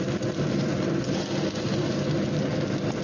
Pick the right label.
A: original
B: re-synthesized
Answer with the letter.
A